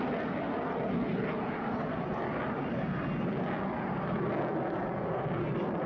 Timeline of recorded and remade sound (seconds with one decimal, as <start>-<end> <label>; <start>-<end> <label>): 0.0-5.9 recorded